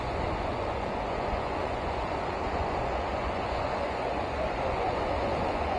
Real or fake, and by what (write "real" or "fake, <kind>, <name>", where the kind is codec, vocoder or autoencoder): fake, vocoder, Vocos